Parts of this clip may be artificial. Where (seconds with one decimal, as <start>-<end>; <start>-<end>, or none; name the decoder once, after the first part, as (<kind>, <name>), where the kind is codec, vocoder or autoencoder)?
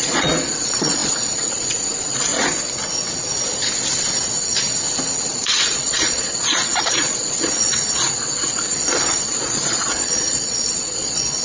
0.0-2.3 (vocoder, Vocos); 5.3-11.4